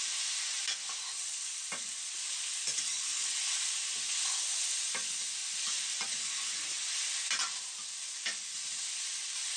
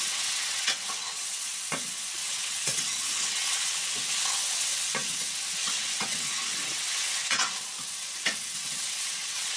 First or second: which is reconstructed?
second